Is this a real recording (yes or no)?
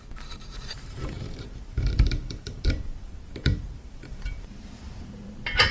no